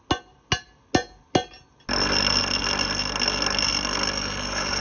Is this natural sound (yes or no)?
yes